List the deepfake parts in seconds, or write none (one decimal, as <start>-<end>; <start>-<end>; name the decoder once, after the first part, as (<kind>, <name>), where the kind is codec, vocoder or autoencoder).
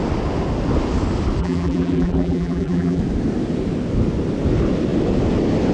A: 1.4-3.0 (vocoder, BigVGAN v2)